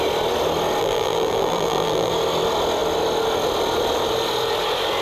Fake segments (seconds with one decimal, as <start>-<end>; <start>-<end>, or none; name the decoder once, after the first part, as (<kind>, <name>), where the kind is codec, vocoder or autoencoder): 0.8-2.1 (vocoder, BigVGAN v2)